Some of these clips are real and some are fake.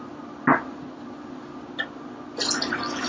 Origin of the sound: real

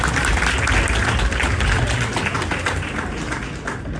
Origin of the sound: real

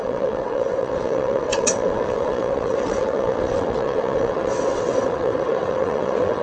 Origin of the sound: fake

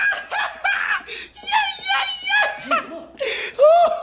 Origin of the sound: real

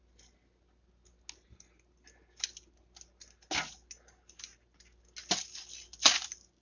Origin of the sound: real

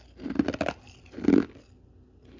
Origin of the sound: real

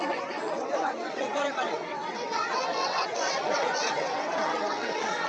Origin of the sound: fake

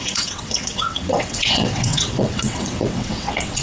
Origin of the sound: fake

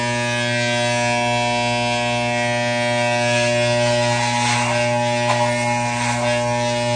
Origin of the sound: real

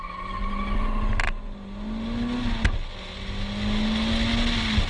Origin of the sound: real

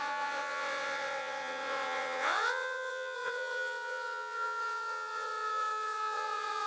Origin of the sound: fake